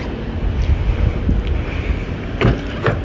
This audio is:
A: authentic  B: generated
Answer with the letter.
A